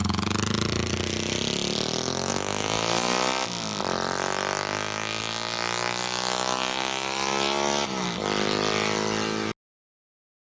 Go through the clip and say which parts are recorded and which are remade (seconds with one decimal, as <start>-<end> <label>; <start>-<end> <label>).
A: 0.0-10.5 recorded